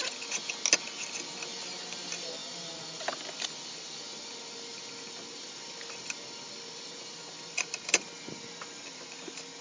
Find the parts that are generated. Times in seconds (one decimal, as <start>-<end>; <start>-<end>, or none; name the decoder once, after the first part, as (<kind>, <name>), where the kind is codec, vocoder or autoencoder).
none